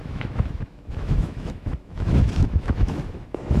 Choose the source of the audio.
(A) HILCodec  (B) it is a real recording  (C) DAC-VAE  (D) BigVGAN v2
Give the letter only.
C